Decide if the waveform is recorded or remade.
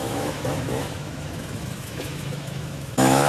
remade